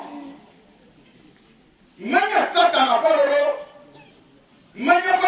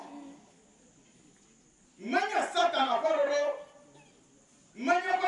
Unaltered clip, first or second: second